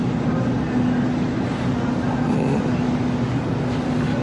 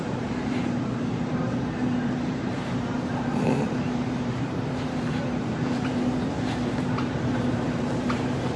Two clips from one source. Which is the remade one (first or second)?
second